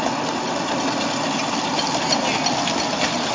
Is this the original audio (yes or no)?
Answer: yes